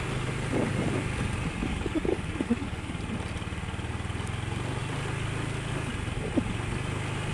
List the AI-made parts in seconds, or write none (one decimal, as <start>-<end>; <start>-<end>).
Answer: 1.6-3.0